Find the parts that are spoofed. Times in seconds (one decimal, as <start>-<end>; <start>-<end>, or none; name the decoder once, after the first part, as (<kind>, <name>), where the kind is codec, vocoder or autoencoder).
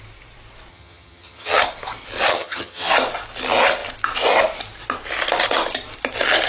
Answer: 0.7-1.6 (vocoder, HiFi-GAN); 2.3-2.9